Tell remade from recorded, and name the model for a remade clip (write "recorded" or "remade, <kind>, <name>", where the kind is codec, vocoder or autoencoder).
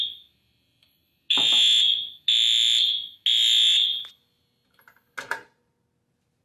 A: recorded